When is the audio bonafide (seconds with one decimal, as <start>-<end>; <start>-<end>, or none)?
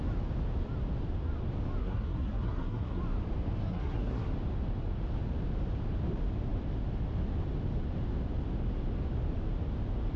0.0-1.8; 3.0-3.6; 4.3-10.2